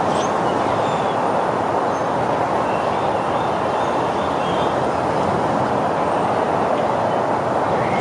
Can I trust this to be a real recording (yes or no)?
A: yes